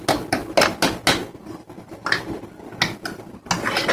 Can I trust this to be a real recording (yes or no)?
yes